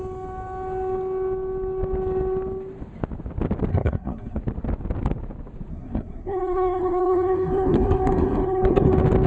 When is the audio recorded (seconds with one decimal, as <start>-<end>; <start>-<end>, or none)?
0.0-3.7; 4.4-5.7; 8.9-9.3